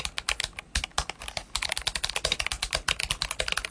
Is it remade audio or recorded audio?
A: recorded